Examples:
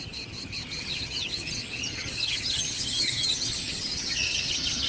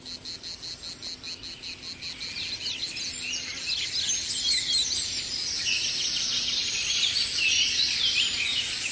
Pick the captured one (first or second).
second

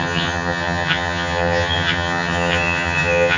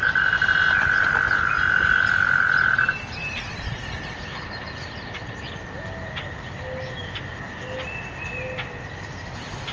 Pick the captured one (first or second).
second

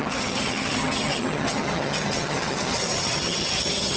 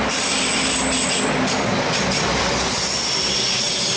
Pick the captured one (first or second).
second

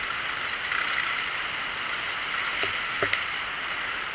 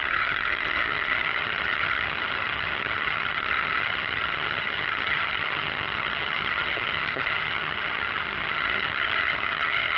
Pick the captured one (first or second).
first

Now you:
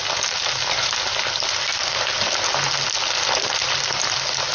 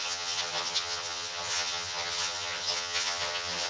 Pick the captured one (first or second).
first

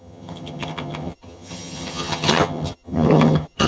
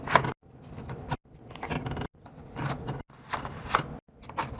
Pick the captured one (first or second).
second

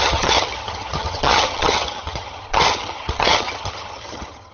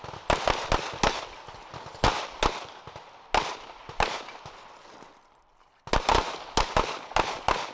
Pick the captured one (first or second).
second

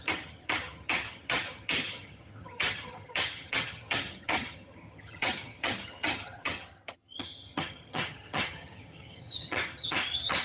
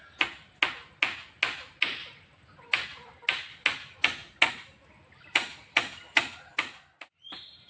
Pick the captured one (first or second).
second